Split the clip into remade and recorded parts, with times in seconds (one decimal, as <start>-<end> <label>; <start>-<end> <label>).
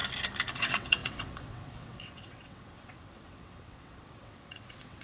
0.0-0.6 recorded; 0.6-5.0 remade